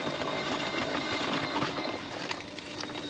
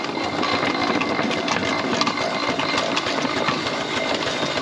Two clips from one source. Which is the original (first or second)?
second